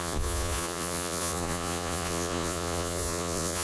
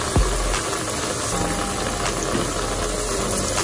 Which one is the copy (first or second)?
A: first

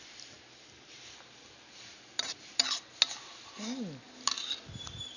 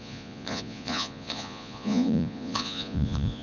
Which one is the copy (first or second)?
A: second